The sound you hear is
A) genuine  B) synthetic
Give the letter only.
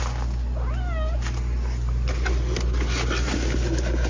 A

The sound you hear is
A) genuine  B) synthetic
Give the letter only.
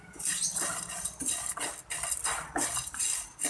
A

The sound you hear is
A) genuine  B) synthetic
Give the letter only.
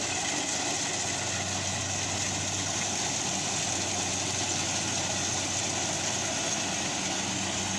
A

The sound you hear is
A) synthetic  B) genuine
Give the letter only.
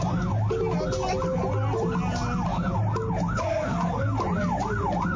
B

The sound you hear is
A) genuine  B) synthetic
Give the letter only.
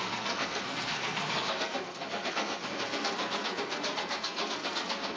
B